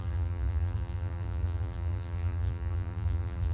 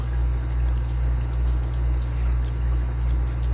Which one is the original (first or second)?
second